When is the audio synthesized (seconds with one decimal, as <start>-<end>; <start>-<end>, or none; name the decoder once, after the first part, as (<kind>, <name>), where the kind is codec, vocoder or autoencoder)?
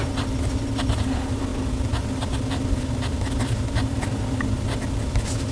none